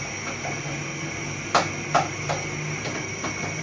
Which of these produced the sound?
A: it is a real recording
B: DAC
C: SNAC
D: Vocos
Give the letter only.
A